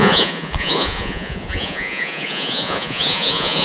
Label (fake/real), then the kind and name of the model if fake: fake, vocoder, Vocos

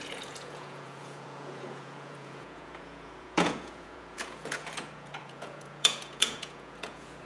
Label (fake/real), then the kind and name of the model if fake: fake, vocoder, Vocos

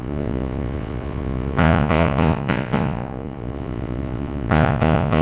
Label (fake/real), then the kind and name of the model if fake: fake, vocoder, Vocos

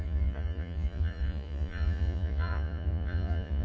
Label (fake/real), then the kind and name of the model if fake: fake, vocoder, Vocos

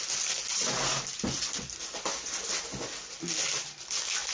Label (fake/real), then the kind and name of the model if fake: real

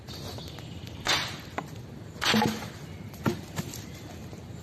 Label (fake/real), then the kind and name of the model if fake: real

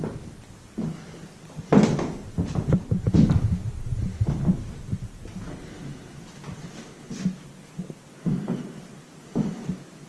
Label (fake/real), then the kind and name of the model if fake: real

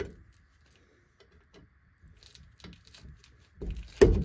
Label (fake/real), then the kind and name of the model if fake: real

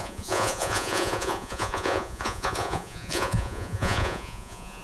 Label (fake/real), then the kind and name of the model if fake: fake, vocoder, Vocos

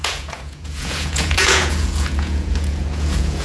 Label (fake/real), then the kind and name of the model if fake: fake, vocoder, Vocos